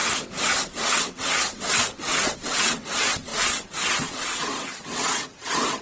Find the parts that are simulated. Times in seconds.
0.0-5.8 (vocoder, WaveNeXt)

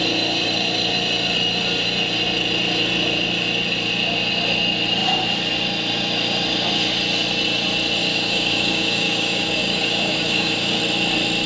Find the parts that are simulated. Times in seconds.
8.0-10.8 (codec, DAC)

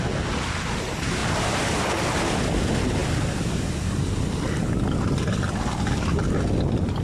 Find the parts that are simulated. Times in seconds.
none

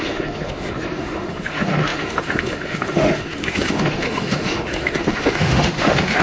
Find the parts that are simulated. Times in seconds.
0.0-6.2 (autoencoder, DAC-VAE)

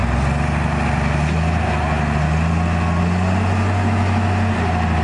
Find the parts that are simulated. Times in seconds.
none

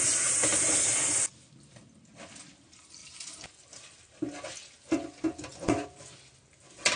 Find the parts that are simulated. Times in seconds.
none

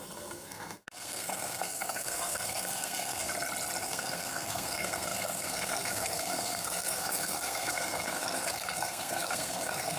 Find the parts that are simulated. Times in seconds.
0.0-3.3 (codec, SNAC); 3.8-10.0